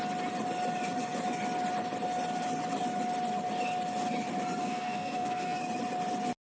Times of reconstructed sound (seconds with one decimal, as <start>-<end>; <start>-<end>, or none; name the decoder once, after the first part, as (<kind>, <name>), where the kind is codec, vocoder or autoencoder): 4.6-5.6 (codec, SNAC)